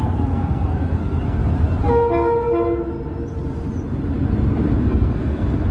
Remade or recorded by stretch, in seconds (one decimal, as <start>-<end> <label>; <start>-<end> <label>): 0.0-1.4 remade; 1.4-4.8 recorded; 4.8-5.7 remade